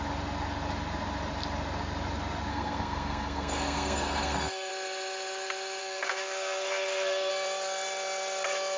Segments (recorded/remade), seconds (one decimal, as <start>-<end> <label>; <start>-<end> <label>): 0.0-2.5 recorded; 2.5-4.7 remade; 4.7-5.8 recorded; 5.8-7.3 remade; 7.3-8.8 recorded